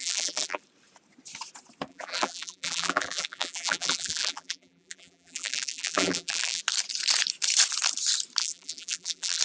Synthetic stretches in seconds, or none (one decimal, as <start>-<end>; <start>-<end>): 0.0-0.6; 1.9-6.6; 8.4-9.4